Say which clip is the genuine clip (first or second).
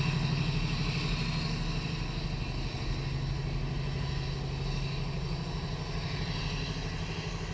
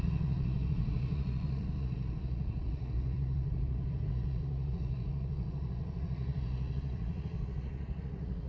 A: first